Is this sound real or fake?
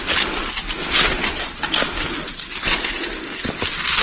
real